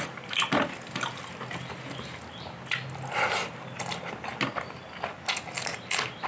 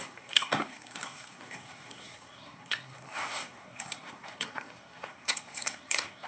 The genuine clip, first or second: first